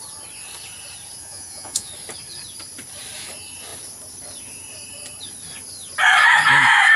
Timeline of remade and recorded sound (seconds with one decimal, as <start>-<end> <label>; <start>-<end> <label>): 0.0-1.2 recorded; 1.2-1.9 remade; 1.9-7.0 recorded